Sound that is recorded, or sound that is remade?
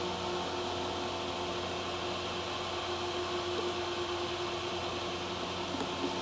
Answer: recorded